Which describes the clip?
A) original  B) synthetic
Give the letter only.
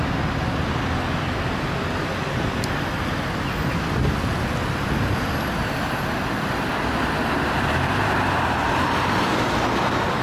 A